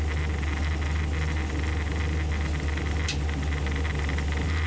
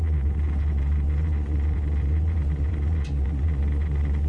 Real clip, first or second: first